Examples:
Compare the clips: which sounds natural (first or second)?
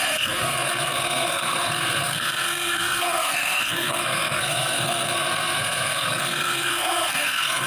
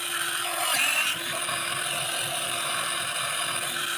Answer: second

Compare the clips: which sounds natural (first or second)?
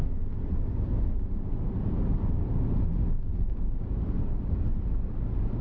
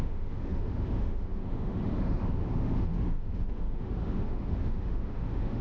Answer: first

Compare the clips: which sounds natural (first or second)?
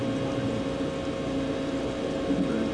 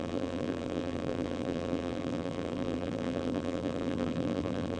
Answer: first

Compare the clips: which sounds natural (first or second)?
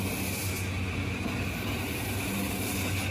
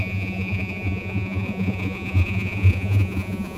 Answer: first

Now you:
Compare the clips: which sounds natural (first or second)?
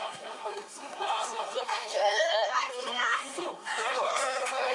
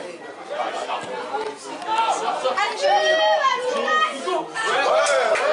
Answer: second